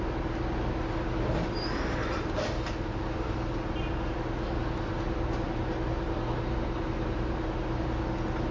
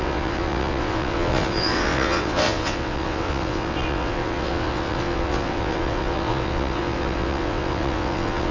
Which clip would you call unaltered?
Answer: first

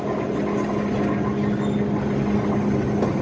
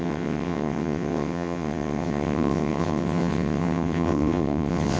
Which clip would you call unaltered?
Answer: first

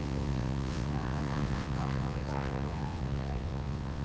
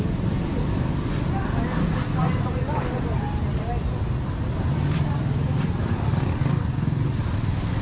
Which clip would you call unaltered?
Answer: second